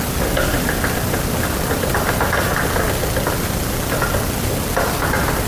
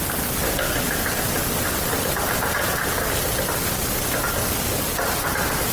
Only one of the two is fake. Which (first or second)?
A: second